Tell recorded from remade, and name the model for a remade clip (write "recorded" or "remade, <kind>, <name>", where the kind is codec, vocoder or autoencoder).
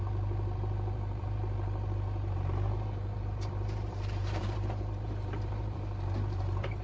remade, vocoder, BigVGAN v2